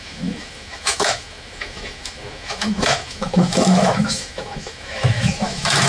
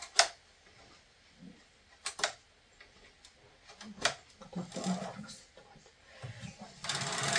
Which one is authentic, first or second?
second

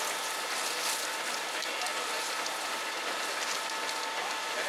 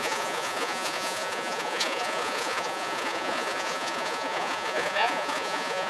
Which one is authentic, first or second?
first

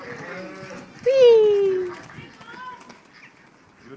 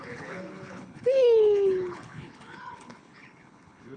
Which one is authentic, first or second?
first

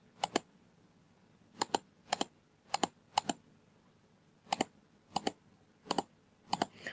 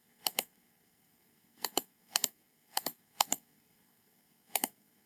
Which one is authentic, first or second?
first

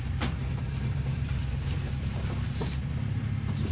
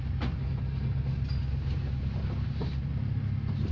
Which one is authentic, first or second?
second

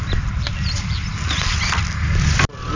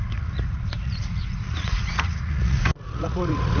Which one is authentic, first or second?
first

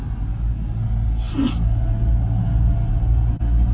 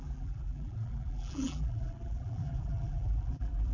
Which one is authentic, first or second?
first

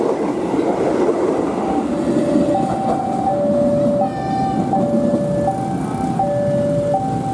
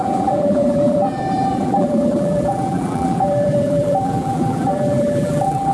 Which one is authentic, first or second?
first